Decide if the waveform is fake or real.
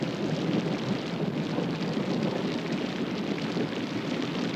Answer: real